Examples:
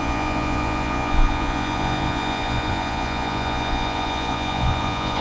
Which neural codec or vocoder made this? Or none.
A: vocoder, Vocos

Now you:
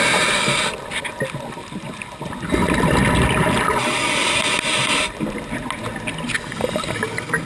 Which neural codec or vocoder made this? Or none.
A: none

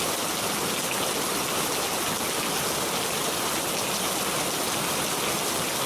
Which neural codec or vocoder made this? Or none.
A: none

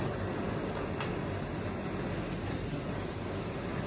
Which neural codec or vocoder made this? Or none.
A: none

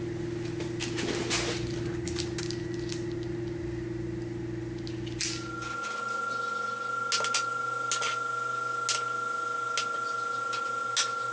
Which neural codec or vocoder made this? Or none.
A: none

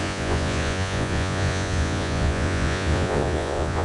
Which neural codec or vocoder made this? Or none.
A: vocoder, Vocos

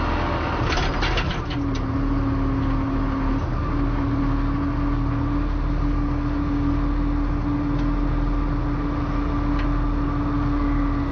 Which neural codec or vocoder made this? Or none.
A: none